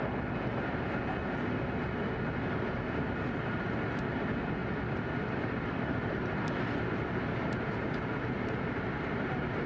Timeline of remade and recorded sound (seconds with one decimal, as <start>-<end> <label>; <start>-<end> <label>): 0.0-4.6 recorded; 4.6-7.6 remade; 7.6-9.7 recorded